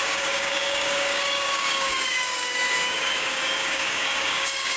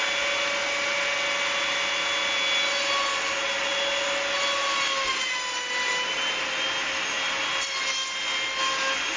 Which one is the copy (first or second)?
first